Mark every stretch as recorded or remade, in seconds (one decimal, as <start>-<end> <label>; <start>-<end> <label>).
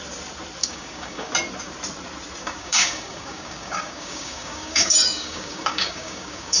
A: 0.0-0.6 recorded; 0.6-1.3 remade; 1.3-2.4 recorded; 2.4-6.6 remade